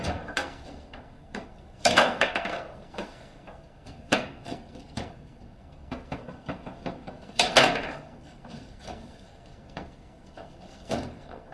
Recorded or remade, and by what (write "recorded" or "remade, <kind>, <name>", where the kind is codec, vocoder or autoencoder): remade, codec, SNAC